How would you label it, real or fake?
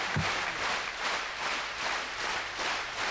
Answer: real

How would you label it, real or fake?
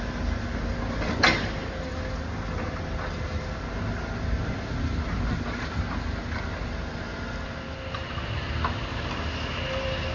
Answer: real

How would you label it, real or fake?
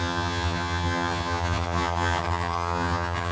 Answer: fake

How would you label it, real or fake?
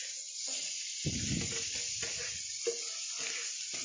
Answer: real